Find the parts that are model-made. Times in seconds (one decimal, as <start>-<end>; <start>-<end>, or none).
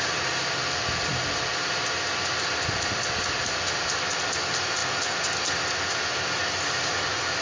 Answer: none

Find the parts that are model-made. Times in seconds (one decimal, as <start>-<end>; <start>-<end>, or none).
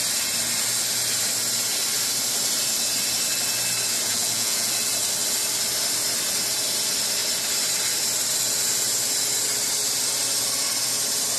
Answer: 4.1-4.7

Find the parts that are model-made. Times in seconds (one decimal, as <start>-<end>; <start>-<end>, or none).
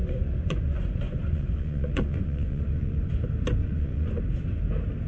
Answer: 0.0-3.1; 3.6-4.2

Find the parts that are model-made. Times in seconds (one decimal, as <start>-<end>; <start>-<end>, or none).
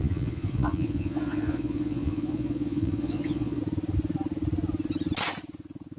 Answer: 0.0-3.6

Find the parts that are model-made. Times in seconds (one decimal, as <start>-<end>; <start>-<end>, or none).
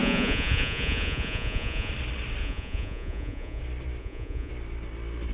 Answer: 0.0-1.9; 2.4-3.6; 4.0-4.5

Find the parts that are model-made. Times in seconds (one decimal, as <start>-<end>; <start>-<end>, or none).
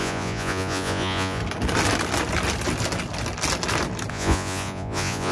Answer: 0.0-1.4; 4.1-5.3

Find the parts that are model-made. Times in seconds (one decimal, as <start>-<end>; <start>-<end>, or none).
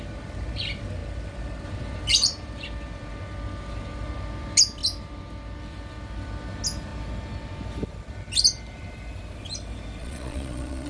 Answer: 10.0-10.9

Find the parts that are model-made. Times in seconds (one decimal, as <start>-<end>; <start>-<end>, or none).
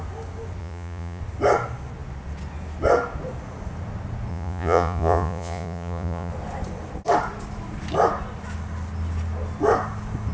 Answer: 0.6-1.2; 4.3-6.3